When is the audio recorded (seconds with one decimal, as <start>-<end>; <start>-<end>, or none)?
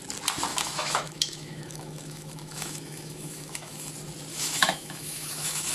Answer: 0.0-0.5; 3.9-4.3